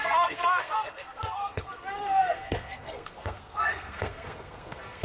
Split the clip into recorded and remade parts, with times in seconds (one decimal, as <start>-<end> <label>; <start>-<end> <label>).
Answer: 0.0-5.0 remade